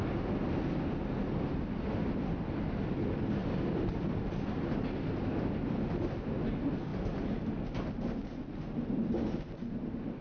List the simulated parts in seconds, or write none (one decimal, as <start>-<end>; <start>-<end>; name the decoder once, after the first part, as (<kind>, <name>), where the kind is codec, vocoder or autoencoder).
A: 3.4-4.5 (vocoder, BigVGAN v2); 6.9-7.5